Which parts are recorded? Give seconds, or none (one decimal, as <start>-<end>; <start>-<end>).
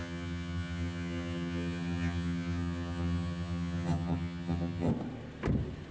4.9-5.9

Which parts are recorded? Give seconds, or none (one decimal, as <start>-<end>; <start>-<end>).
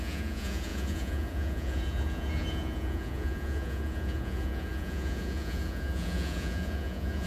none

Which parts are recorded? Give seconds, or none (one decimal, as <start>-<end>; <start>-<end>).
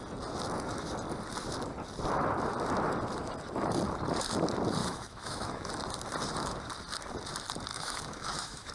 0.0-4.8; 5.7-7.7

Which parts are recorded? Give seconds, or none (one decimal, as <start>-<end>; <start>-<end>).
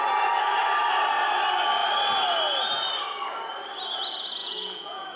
0.0-4.4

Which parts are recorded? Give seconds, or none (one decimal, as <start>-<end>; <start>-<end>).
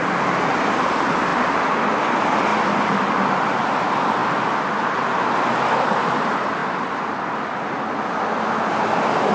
0.0-1.3; 2.0-2.5; 3.8-9.3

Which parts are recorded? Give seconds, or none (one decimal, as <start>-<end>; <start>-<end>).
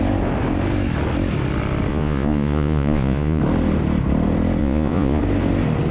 0.0-1.9; 3.4-4.6; 5.2-5.9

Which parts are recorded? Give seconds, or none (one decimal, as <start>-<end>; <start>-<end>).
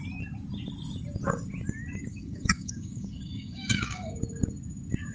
0.0-2.1; 4.1-5.1